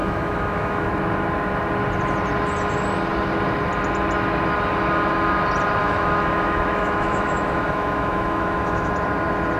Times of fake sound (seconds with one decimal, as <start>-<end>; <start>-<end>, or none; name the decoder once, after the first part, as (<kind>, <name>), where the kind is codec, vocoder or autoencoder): 0.0-0.9 (autoencoder, DAC-VAE); 5.8-8.9